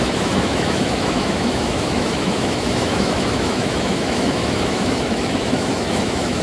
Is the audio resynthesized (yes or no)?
yes